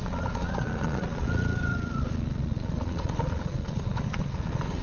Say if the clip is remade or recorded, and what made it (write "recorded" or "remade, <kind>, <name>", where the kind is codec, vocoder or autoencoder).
remade, vocoder, Vocos